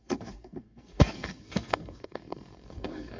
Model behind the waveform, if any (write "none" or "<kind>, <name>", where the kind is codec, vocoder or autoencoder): codec, SNAC